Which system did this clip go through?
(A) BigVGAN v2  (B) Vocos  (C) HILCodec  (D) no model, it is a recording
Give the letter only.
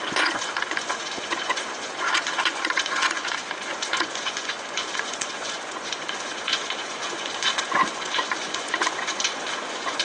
B